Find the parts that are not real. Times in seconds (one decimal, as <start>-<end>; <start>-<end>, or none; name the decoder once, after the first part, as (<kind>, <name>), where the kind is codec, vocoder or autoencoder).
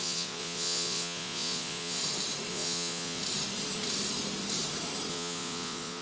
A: 0.0-2.0 (vocoder, Vocos); 2.5-3.2; 5.1-6.0